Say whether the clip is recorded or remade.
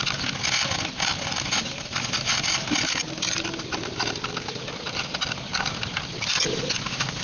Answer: recorded